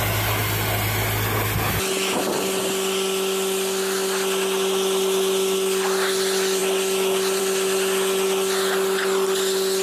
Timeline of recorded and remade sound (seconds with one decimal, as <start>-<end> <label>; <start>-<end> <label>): 0.0-9.8 recorded